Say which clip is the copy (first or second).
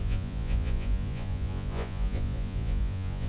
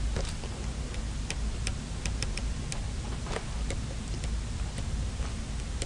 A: first